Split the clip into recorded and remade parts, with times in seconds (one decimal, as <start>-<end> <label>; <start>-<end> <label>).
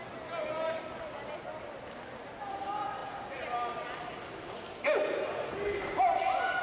0.0-6.6 recorded